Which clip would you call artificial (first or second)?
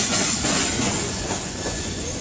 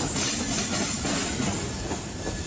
first